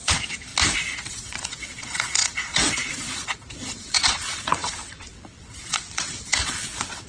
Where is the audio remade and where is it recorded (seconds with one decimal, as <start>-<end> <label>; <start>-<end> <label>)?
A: 0.0-0.5 remade; 0.5-1.1 recorded; 1.1-7.1 remade